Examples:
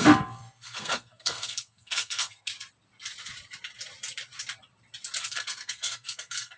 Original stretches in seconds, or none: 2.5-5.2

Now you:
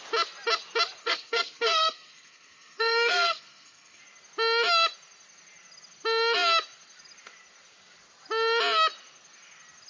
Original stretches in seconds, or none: 0.0-1.0; 4.0-9.9

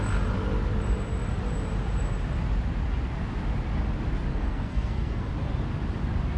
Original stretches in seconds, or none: 0.0-4.3; 5.3-6.4

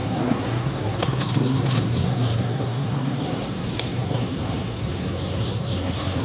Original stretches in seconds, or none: none

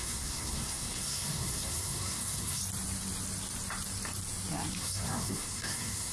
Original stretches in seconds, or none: 2.6-4.8